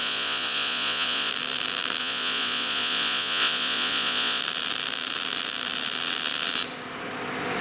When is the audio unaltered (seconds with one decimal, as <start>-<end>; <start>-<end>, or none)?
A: 1.3-2.0; 4.4-7.6